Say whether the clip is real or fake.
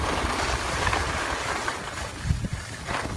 real